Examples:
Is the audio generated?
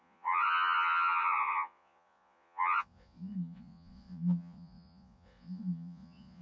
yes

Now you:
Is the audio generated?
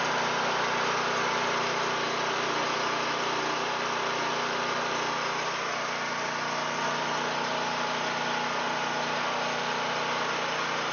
no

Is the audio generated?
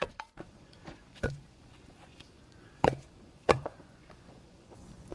yes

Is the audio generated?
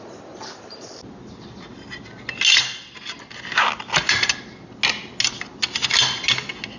no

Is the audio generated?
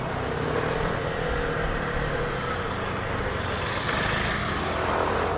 no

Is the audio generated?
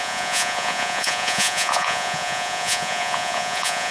yes